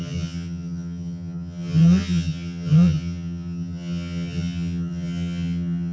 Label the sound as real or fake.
fake